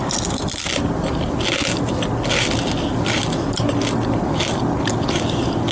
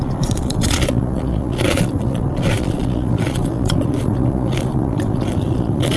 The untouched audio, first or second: first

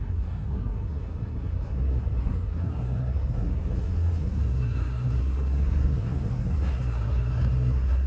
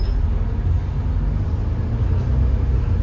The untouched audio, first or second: second